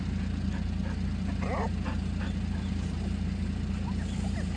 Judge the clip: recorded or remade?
recorded